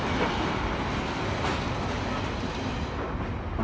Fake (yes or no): no